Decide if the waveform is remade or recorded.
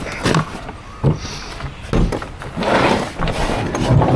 recorded